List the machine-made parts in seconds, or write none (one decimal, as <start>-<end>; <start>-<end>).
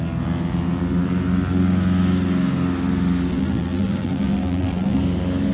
3.3-5.0